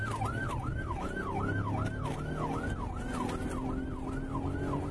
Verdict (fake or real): real